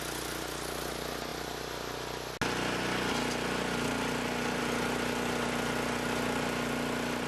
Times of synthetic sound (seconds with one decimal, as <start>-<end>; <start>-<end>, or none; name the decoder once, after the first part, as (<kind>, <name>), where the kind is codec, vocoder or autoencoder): none